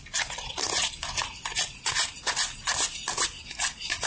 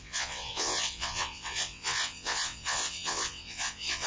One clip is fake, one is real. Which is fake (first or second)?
second